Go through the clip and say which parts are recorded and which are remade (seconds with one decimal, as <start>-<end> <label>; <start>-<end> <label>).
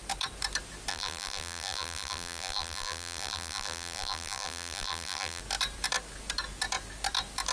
0.0-0.9 recorded; 0.9-5.4 remade; 5.4-7.5 recorded